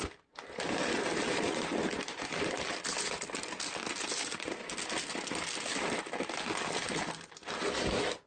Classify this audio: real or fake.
real